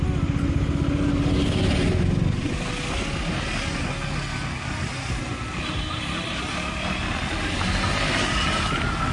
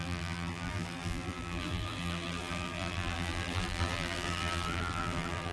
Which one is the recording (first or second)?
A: first